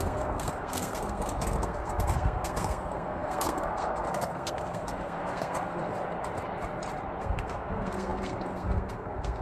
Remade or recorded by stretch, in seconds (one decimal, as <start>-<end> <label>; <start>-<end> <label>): 0.0-5.9 remade; 5.9-7.2 recorded; 7.2-9.4 remade